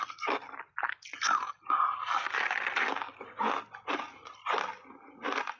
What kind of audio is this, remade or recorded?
recorded